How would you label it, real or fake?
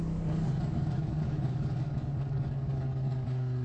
fake